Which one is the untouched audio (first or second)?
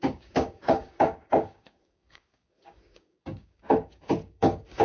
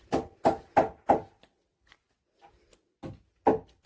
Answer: second